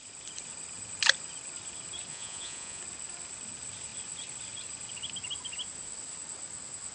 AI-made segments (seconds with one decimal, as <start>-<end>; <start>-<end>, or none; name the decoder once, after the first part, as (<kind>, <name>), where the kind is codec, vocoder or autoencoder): 2.1-2.8 (vocoder, Vocos)

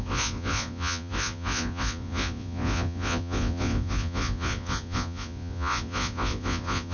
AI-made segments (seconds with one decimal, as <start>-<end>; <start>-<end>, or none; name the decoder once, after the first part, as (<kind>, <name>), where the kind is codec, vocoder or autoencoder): 0.0-6.9 (vocoder, Vocos)

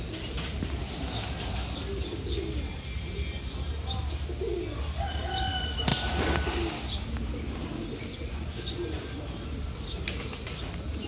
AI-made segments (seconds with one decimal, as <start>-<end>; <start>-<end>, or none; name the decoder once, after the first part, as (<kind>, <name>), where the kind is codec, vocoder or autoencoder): 8.3-9.2 (vocoder, Vocos)

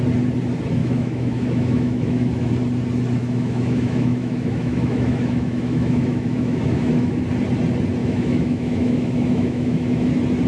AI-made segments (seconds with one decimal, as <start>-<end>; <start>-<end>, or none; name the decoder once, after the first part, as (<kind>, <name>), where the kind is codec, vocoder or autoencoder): 0.8-2.5 (autoencoder, DAC-VAE); 3.2-7.2; 8.0-10.1

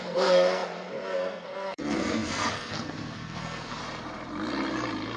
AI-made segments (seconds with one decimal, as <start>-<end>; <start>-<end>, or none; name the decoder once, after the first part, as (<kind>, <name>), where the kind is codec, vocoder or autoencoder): 0.0-3.8 (codec, SNAC)

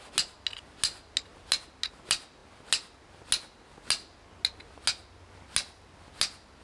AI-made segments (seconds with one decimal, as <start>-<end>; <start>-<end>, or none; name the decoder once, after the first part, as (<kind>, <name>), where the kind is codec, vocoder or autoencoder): none